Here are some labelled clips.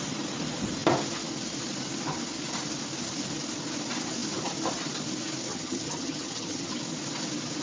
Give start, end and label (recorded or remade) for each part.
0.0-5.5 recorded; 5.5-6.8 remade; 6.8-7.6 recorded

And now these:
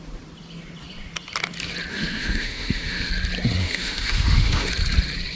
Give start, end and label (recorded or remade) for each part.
0.0-1.9 recorded; 1.9-3.1 remade; 3.1-3.6 recorded; 3.6-4.7 remade; 4.7-5.4 recorded

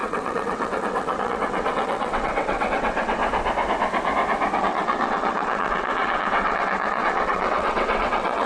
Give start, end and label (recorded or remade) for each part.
0.0-3.2 remade; 3.2-4.6 recorded; 4.6-8.5 remade

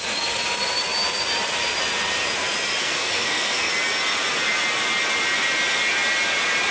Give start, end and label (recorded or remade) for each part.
0.0-2.8 recorded; 2.8-3.7 remade; 3.7-6.7 recorded

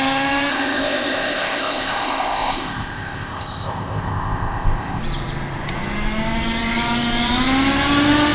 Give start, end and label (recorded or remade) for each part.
0.0-0.5 recorded; 0.5-5.0 remade; 5.0-8.3 recorded

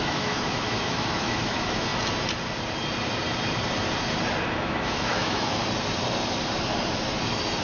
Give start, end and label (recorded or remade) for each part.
0.0-1.9 remade; 1.9-4.5 recorded; 4.5-5.6 remade; 5.6-7.6 recorded